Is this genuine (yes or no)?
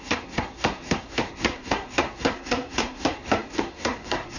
no